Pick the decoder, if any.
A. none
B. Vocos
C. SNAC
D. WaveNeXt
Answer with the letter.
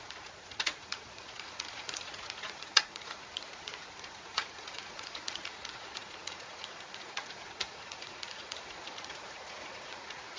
B